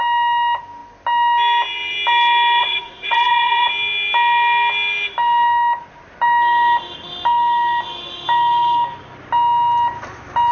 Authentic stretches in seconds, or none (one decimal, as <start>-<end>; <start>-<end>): 0.0-2.6; 3.7-10.5